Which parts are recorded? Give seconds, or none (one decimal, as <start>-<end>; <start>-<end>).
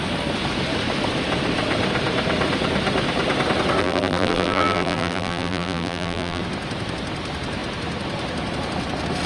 0.0-3.8; 6.4-9.3